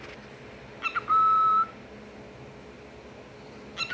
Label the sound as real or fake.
real